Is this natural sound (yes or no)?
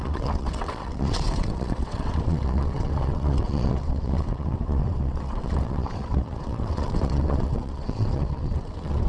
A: no